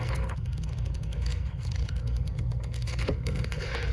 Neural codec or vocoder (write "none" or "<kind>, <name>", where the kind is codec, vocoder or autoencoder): codec, SNAC